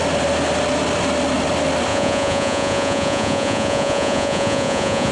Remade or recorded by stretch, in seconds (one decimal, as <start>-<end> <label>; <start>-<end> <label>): 0.0-1.9 recorded; 1.9-5.1 remade